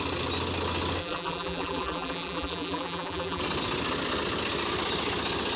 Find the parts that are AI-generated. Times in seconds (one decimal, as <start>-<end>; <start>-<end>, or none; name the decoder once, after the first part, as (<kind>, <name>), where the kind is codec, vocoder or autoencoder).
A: 1.0-3.4 (vocoder, BigVGAN v2)